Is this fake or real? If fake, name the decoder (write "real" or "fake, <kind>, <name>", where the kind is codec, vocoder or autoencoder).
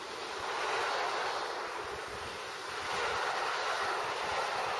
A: real